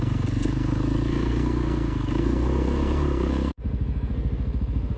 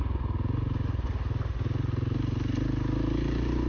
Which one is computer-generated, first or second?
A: first